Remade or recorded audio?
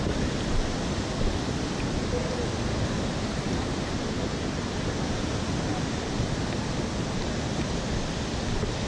recorded